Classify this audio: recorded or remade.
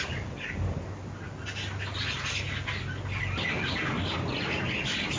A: recorded